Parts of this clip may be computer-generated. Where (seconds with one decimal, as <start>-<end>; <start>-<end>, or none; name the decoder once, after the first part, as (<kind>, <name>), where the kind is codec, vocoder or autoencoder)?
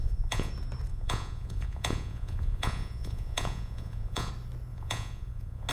0.0-0.5 (vocoder, Vocos); 0.9-4.3; 4.7-5.7